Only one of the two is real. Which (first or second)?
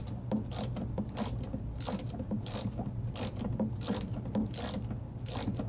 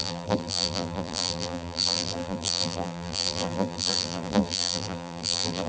first